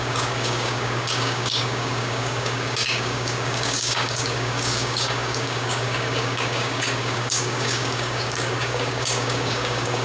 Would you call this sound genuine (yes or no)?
no